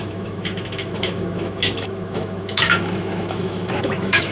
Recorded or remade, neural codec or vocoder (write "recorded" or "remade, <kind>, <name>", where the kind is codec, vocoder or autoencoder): remade, autoencoder, DAC-VAE